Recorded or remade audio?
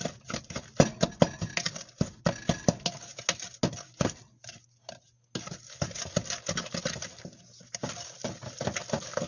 recorded